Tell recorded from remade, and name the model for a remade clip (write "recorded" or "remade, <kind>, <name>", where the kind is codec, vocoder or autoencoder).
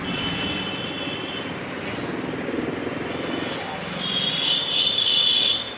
recorded